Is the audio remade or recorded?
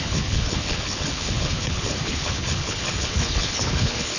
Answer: remade